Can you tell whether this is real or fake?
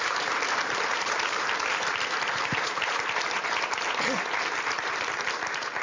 fake